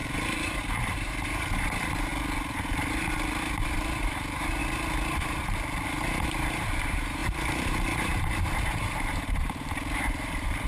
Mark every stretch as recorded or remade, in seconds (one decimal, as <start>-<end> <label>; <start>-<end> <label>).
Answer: 0.0-2.1 remade; 2.1-2.9 recorded; 2.9-4.6 remade; 4.6-5.2 recorded; 5.2-10.7 remade